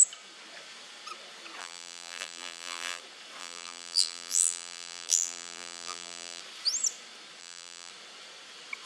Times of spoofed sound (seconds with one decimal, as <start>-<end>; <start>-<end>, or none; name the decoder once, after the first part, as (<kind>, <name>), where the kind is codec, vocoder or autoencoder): 1.6-3.0 (vocoder, BigVGAN v2); 3.4-6.4; 7.4-7.9